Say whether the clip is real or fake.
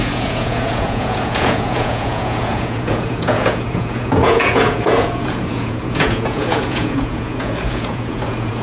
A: fake